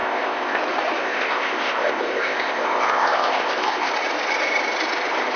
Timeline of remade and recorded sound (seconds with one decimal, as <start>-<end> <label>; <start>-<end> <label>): 0.0-0.6 remade; 0.6-1.0 recorded; 1.0-3.9 remade; 3.9-5.4 recorded